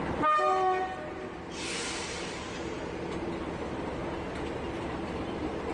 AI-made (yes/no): no